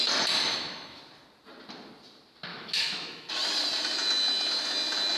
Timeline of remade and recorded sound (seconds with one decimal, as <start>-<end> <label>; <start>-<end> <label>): 0.0-0.5 recorded; 0.5-1.0 remade; 1.0-2.5 recorded; 2.5-3.3 remade; 3.3-5.2 recorded